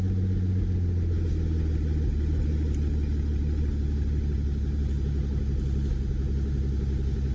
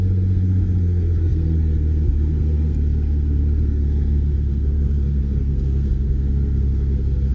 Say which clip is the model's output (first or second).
second